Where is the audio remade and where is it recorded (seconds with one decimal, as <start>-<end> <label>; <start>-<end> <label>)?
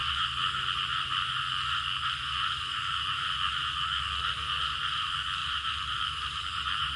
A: 0.0-5.4 recorded; 5.4-6.4 remade; 6.4-7.0 recorded